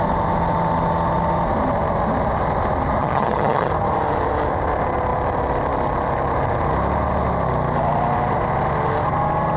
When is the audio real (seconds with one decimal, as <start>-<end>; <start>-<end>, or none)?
0.0-3.0; 3.7-9.6